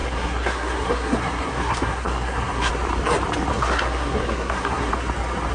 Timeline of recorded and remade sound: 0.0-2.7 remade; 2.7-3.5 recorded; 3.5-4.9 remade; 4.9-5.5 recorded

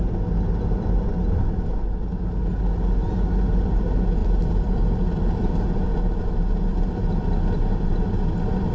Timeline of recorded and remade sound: 0.0-4.2 recorded; 4.2-5.3 remade; 5.3-6.7 recorded; 6.7-7.9 remade; 7.9-8.7 recorded

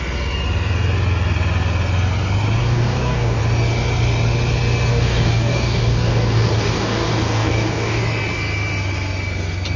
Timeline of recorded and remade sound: 0.0-2.6 recorded; 2.6-3.4 remade; 3.4-4.9 recorded; 4.9-8.0 remade; 8.0-9.8 recorded

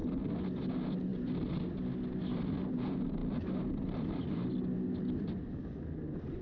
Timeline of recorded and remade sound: 0.0-6.4 recorded

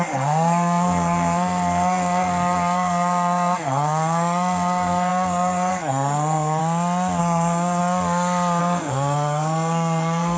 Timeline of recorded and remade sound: 0.0-6.6 remade; 6.6-7.2 recorded; 7.2-7.8 remade; 7.8-8.6 recorded; 8.6-10.4 remade

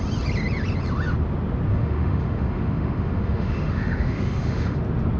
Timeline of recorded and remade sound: 0.0-1.7 recorded; 1.7-4.8 remade; 4.8-5.2 recorded

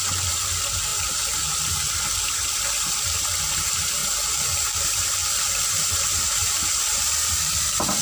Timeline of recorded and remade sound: 0.0-4.0 remade; 4.0-4.8 recorded; 4.8-8.0 remade